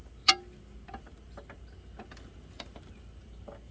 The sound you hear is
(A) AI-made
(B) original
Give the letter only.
B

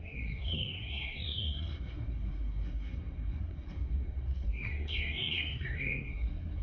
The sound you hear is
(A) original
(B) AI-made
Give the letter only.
B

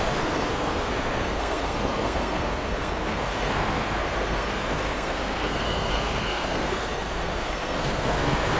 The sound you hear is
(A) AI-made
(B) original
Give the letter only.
A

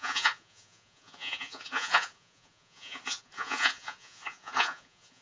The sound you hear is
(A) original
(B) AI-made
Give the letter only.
B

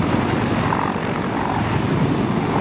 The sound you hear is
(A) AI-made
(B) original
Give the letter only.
B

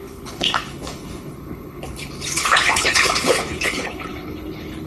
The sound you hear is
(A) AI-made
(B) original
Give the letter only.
A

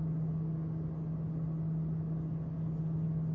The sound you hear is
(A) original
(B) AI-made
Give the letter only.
A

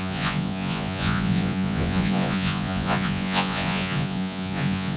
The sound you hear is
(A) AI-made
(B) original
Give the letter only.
A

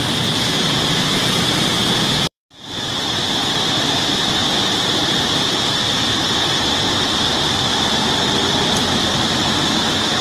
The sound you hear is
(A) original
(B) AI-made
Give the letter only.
B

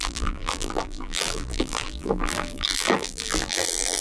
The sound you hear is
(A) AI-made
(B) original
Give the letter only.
A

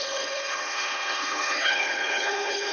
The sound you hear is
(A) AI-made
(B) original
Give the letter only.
A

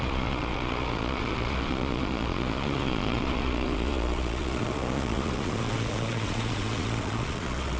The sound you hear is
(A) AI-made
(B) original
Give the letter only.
A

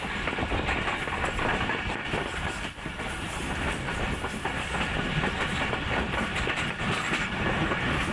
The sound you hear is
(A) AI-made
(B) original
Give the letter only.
B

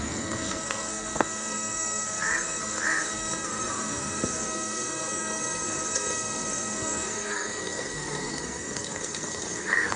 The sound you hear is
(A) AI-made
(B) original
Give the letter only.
A